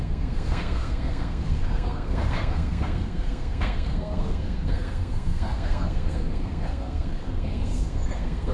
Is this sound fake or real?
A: fake